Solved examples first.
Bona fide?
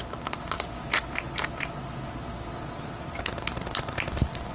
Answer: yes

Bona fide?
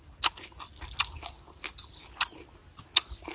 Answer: yes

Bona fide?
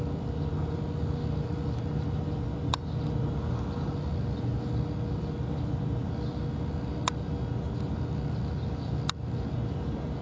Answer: yes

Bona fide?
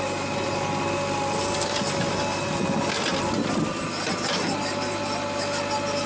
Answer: yes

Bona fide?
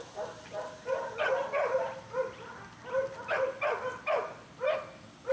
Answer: yes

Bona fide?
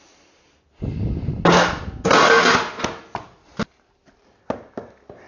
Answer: yes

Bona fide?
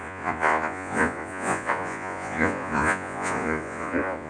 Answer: no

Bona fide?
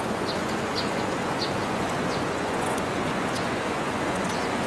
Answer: no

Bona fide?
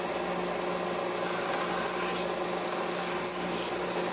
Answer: yes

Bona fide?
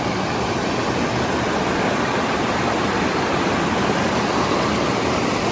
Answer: yes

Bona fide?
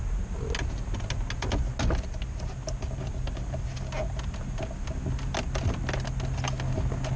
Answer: yes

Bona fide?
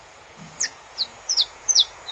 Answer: no